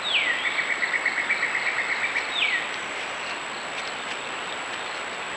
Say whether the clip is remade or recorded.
remade